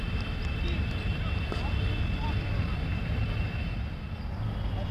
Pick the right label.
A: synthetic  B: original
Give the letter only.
B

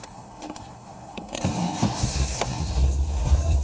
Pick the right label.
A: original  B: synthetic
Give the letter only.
B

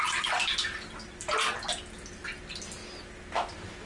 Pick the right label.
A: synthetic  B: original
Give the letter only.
B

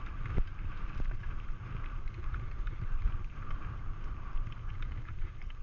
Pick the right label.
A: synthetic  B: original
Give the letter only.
A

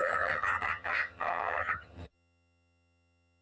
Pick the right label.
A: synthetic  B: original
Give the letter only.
A